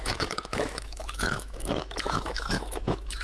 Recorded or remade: remade